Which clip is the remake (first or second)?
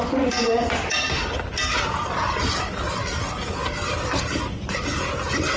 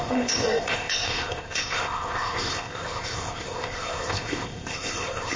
second